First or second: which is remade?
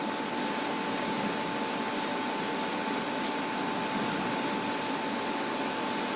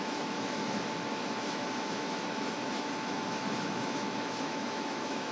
second